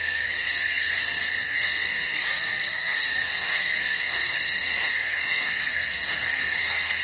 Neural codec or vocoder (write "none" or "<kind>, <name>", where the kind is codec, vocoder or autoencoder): codec, SNAC